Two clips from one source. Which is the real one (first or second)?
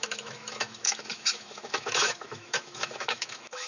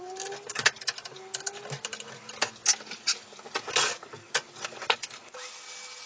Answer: second